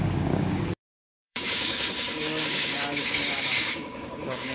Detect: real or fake fake